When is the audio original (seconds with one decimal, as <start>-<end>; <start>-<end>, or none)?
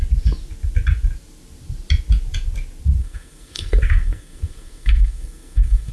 0.0-3.0